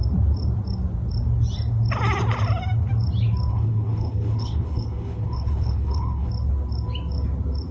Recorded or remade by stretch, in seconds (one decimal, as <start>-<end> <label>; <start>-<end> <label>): 0.0-3.5 recorded; 3.5-6.3 remade; 6.3-7.7 recorded

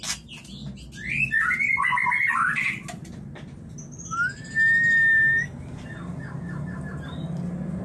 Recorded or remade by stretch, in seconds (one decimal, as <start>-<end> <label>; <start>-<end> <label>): 0.0-7.8 recorded

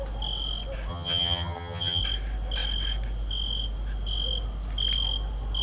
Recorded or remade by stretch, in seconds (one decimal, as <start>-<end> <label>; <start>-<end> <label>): 0.0-0.9 recorded; 0.9-2.0 remade; 2.0-5.6 recorded

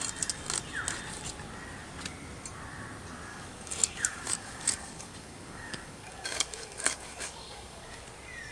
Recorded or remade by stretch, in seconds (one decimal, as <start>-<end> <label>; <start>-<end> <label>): 0.0-3.3 recorded; 3.3-8.0 remade; 8.0-8.5 recorded

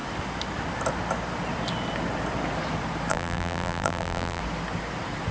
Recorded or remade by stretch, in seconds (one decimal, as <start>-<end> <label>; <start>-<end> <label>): 0.0-3.1 recorded; 3.1-4.4 remade; 4.4-5.3 recorded